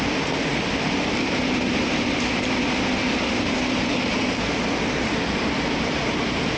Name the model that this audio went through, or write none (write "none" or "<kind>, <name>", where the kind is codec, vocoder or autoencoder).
vocoder, BigVGAN v2